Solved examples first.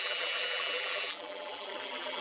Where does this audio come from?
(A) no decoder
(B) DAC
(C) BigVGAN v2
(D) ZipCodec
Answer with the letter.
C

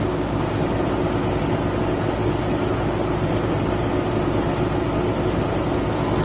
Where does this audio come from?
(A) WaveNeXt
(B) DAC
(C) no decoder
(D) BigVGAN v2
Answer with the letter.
C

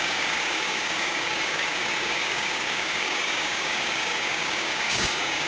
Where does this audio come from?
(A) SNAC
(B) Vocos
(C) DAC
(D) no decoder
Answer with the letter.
C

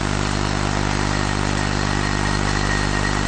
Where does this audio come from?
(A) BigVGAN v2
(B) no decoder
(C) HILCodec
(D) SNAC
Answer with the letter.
B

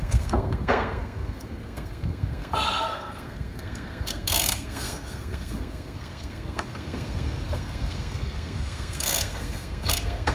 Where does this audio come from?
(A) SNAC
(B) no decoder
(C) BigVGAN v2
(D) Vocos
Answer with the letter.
A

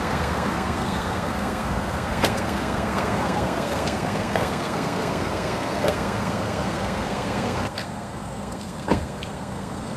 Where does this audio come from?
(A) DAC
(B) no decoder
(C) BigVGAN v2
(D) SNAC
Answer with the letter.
D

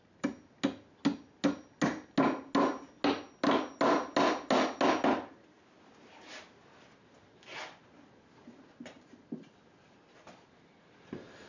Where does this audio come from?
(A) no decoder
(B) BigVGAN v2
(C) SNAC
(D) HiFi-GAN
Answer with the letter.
A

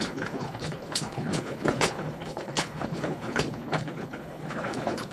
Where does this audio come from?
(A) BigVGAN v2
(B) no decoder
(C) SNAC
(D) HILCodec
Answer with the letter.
D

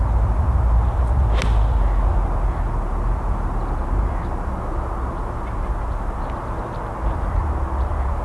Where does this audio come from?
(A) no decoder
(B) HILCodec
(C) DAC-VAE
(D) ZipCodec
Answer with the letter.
A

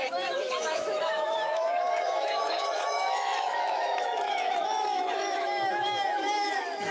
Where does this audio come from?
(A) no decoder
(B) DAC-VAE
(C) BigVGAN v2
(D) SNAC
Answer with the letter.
B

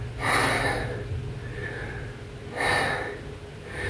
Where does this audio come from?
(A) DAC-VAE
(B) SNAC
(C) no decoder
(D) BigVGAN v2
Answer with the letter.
C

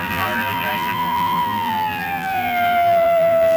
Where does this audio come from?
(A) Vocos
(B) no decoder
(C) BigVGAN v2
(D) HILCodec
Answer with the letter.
C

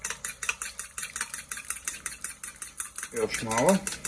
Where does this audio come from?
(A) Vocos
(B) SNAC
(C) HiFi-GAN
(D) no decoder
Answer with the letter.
D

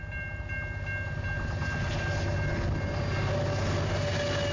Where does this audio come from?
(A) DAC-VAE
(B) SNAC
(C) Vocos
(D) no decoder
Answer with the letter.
D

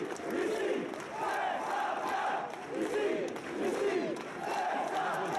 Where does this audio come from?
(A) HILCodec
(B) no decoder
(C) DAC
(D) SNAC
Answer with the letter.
B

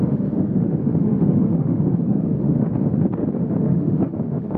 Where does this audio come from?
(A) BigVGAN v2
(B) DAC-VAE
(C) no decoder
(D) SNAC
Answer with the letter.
B